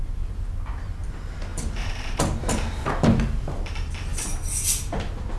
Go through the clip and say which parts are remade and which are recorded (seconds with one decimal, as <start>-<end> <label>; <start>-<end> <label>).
0.0-1.5 recorded; 1.5-2.9 remade; 2.9-5.4 recorded